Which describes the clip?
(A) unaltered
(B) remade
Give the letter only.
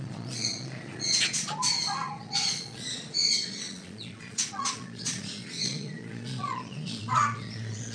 B